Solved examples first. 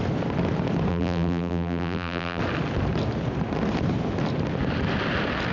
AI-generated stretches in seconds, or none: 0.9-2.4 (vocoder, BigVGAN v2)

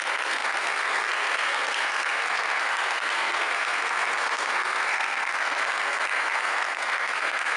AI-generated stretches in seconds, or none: 0.0-7.6 (codec, SNAC)

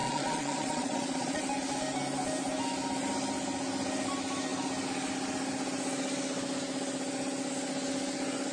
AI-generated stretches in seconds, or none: 0.0-1.4 (vocoder, Vocos)